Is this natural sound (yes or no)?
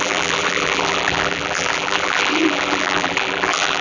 no